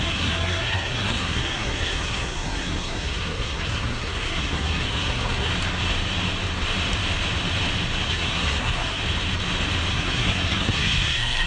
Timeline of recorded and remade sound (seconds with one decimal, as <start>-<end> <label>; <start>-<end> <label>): 0.0-5.5 remade; 5.5-8.1 recorded; 8.1-9.0 remade; 9.0-9.9 recorded; 9.9-11.5 remade